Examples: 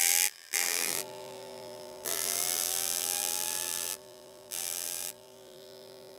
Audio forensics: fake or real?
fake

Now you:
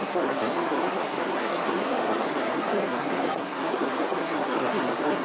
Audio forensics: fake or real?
fake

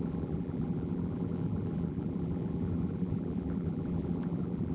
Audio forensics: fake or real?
fake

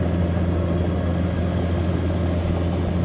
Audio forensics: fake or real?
real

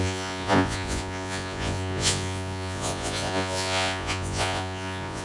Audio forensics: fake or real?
fake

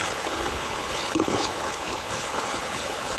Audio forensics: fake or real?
fake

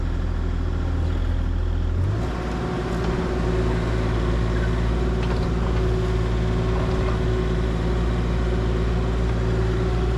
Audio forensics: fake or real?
real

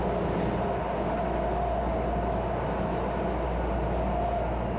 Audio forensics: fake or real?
real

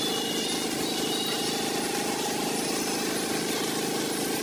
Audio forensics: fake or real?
real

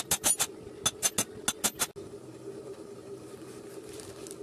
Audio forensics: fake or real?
real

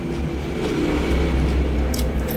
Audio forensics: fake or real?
real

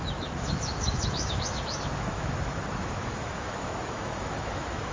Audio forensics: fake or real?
fake